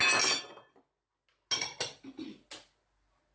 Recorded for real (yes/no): yes